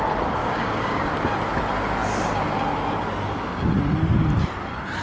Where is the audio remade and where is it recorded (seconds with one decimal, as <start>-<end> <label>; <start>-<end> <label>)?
0.0-0.4 recorded; 0.4-1.1 remade; 1.1-5.0 recorded